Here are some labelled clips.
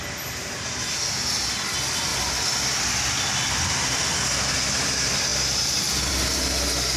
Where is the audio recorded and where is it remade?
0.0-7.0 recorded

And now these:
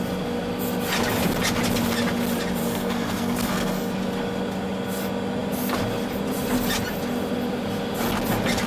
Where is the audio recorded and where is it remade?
0.0-2.6 recorded; 2.6-3.9 remade; 3.9-8.7 recorded

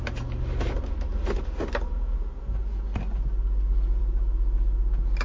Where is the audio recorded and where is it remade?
0.0-5.2 recorded

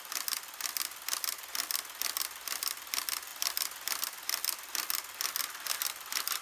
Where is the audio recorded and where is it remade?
0.0-6.4 recorded

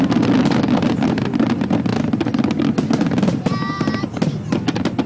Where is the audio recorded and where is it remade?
0.0-5.1 recorded

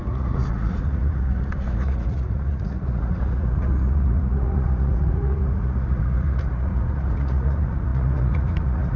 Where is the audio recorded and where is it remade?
0.0-9.0 remade